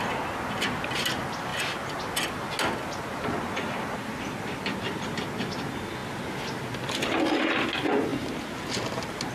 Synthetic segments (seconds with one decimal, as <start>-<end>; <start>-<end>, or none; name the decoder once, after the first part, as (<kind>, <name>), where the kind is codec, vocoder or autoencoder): none